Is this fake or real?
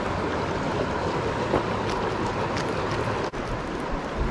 real